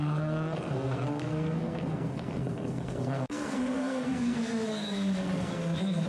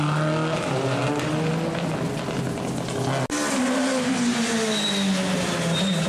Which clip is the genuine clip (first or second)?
second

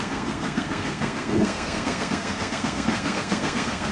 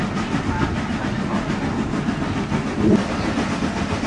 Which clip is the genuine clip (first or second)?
second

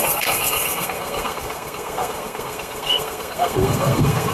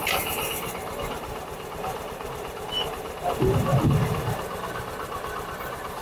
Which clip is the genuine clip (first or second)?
second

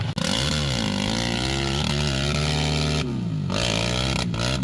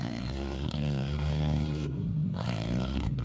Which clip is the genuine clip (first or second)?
first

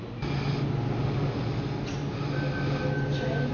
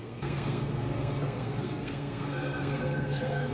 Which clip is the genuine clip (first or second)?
first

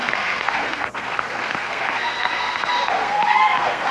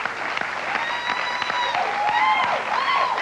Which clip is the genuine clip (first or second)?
second